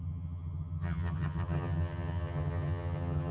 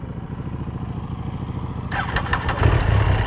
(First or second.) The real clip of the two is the second